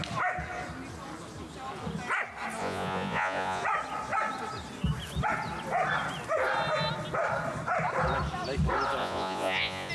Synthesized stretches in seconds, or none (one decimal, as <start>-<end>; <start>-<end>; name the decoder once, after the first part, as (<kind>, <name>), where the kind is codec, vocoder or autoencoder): 2.6-3.6 (vocoder, Vocos); 9.0-9.9